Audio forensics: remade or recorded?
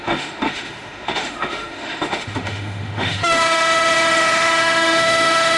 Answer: remade